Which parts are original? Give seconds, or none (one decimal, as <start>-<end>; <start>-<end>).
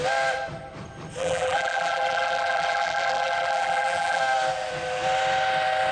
0.0-1.2; 4.2-5.9